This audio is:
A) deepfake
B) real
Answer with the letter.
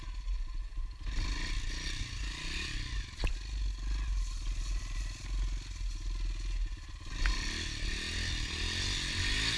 B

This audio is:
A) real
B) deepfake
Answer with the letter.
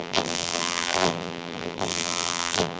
B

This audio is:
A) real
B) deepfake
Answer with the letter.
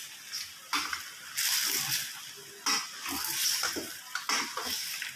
A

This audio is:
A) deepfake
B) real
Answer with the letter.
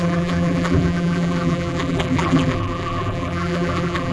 A